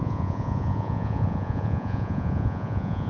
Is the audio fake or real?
fake